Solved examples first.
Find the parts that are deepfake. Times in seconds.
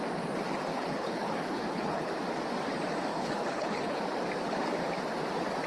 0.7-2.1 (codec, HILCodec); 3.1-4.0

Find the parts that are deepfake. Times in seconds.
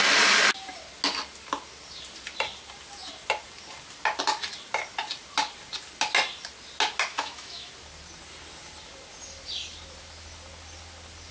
7.1-7.7 (autoencoder, DAC-VAE)